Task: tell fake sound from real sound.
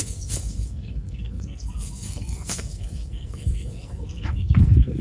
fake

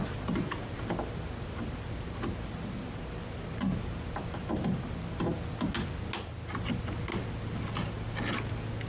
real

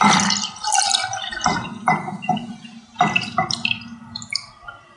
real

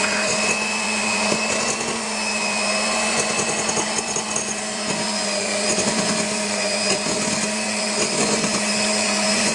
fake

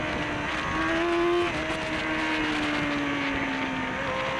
real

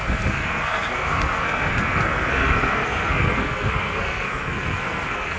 fake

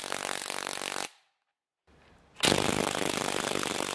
real